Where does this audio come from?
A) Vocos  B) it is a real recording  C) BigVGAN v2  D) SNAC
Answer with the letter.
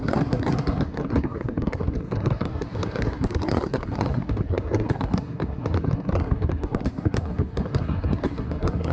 D